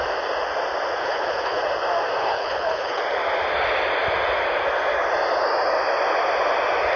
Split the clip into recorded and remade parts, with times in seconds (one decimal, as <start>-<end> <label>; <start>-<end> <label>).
0.0-1.0 recorded; 1.0-1.6 remade; 1.6-2.2 recorded; 2.2-3.0 remade; 3.0-7.0 recorded